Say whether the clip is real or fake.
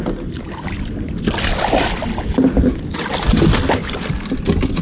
real